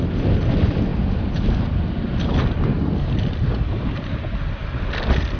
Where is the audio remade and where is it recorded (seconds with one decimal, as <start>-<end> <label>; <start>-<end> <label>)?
0.0-5.4 recorded